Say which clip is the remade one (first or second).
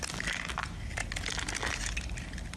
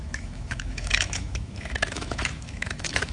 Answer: second